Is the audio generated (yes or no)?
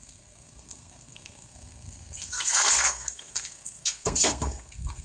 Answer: yes